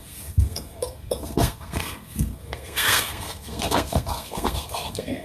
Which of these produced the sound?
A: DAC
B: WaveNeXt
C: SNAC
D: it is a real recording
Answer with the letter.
C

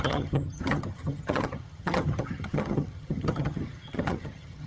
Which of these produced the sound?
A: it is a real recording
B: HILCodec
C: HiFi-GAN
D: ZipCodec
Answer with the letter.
C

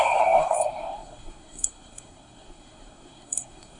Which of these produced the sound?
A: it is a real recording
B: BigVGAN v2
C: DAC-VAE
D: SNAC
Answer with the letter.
D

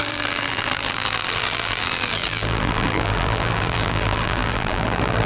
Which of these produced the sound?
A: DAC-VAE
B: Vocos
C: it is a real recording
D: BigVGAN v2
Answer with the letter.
D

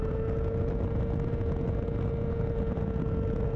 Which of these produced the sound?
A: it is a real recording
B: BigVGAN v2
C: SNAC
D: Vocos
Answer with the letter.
A